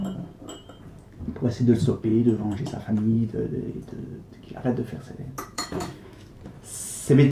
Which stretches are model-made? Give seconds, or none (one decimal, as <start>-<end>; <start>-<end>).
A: 4.9-6.3